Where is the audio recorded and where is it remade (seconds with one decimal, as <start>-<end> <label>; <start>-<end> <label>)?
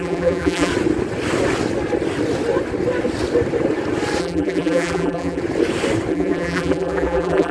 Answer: 0.0-0.7 remade; 0.7-4.2 recorded; 4.2-5.4 remade; 5.4-6.1 recorded; 6.1-7.5 remade